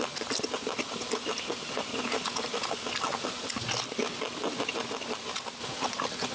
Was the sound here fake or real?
real